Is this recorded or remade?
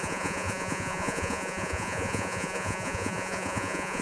remade